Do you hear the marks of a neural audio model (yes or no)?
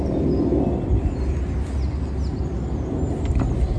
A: no